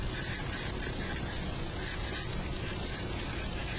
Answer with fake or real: fake